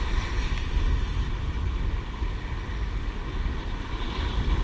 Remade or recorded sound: recorded